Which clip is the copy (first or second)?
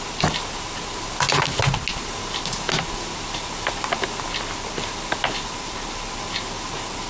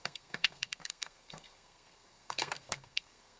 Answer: second